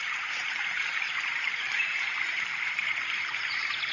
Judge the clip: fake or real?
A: fake